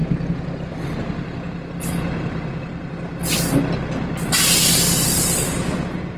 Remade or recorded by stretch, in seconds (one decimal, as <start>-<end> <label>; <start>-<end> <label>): 0.0-6.2 recorded